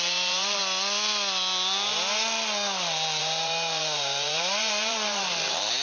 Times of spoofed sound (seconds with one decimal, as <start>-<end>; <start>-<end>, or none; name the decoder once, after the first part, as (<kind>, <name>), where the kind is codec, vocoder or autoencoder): 0.0-0.6 (vocoder, BigVGAN v2); 3.2-5.8